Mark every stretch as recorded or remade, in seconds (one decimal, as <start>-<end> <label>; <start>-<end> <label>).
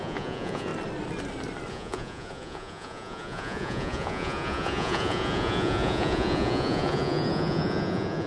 0.0-0.7 remade; 0.7-1.7 recorded; 1.7-8.3 remade